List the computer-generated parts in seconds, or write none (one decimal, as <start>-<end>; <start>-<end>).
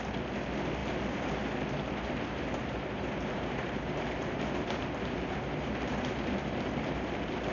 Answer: 0.8-1.4; 2.6-7.1